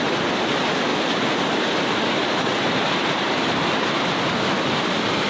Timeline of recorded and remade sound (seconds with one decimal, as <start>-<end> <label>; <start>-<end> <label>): 0.0-0.9 recorded; 0.9-4.1 remade; 4.1-5.3 recorded